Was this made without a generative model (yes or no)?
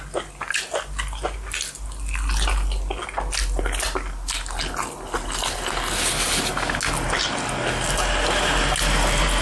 yes